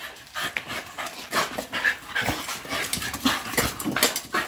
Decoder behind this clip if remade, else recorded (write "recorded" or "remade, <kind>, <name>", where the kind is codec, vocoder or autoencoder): recorded